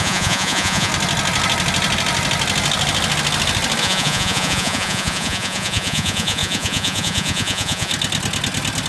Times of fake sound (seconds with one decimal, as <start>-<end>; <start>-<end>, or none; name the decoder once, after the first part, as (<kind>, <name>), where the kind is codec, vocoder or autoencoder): 0.0-0.9 (vocoder, Vocos); 3.8-7.9